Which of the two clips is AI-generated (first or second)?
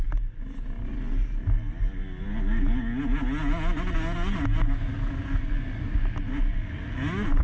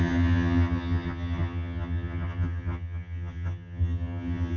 second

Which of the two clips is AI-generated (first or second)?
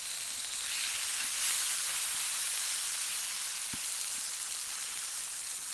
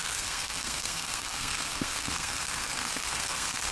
second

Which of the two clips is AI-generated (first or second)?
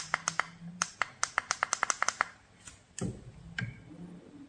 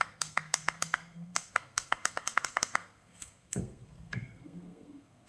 second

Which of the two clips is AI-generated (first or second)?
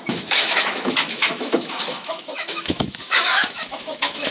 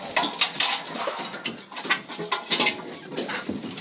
first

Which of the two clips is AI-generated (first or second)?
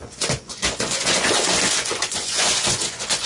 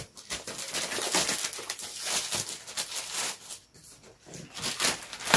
first